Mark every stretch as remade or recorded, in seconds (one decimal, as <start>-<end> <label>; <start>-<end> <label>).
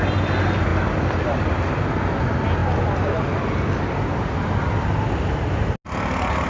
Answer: 0.0-6.5 recorded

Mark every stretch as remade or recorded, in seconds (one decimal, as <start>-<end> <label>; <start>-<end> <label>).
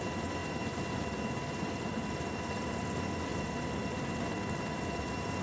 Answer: 0.0-5.4 recorded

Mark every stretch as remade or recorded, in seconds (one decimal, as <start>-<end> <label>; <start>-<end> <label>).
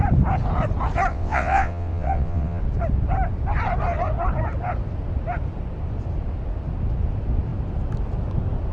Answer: 0.0-1.1 recorded; 1.1-2.6 remade; 2.6-8.7 recorded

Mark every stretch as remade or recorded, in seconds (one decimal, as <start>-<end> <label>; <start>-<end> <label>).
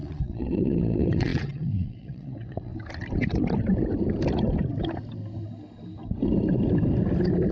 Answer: 0.0-2.7 remade; 2.7-7.5 recorded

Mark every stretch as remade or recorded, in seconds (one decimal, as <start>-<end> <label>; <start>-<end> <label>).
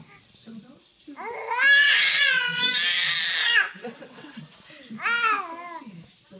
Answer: 0.0-1.8 recorded; 1.8-2.6 remade; 2.6-3.4 recorded; 3.4-4.4 remade; 4.4-6.4 recorded